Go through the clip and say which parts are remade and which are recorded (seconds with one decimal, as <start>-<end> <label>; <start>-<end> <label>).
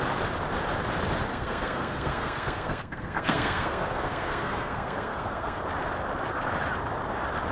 0.0-1.3 recorded; 1.3-5.6 remade; 5.6-7.5 recorded